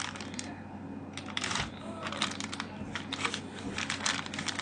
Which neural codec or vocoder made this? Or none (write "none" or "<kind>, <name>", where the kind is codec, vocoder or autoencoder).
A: none